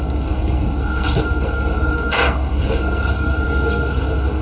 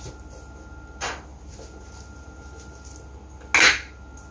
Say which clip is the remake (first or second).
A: first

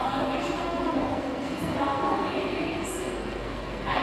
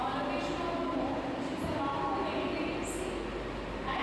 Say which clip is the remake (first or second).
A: first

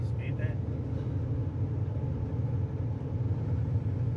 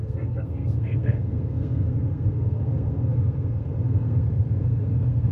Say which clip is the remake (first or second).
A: second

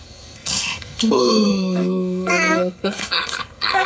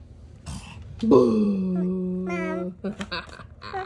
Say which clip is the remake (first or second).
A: first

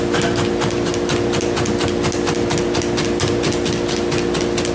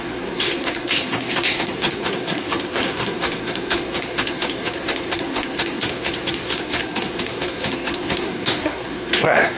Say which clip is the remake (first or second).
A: second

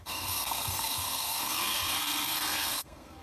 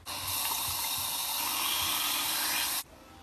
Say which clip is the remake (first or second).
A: first